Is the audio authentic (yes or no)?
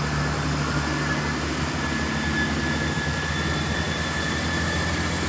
yes